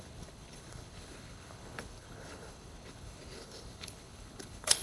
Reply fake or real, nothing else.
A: fake